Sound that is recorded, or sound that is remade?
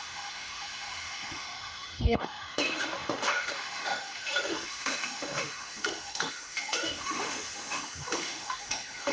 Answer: remade